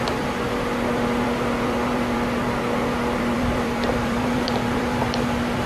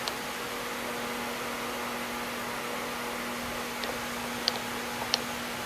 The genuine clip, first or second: second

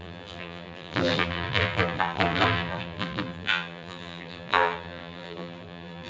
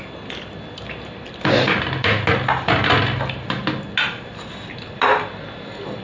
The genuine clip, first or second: second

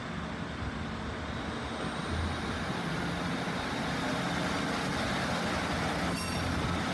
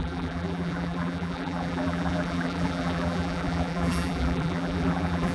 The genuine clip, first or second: first